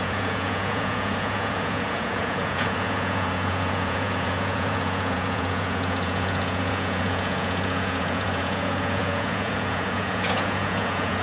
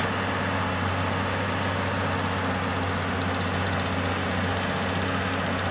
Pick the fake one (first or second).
first